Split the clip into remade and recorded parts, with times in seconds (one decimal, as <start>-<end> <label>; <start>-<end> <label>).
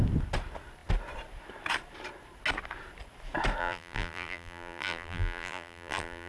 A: 0.0-3.6 recorded; 3.6-6.3 remade